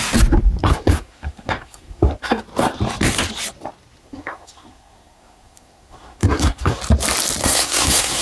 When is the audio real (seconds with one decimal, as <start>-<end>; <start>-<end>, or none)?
0.0-0.6; 2.4-4.0; 6.8-7.4